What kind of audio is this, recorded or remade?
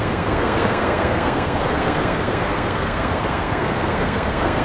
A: remade